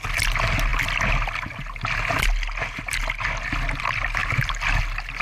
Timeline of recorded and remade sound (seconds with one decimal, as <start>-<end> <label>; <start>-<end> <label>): 0.0-4.2 recorded; 4.2-4.8 remade; 4.8-5.2 recorded